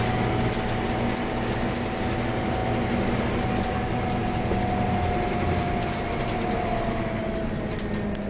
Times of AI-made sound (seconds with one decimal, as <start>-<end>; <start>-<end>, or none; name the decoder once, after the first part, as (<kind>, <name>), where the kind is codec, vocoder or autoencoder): none